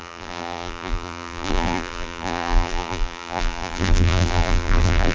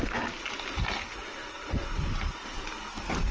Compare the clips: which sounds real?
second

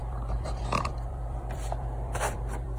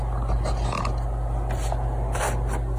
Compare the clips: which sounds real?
second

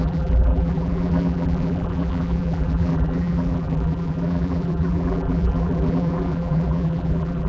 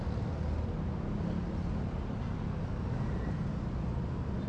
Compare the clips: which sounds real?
second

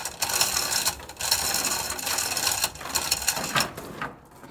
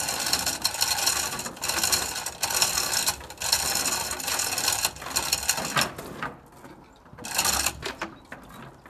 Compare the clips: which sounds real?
second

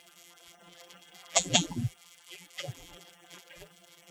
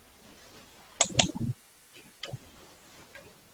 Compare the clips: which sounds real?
second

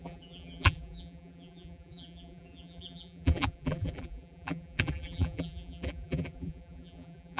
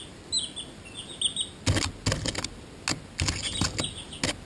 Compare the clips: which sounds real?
second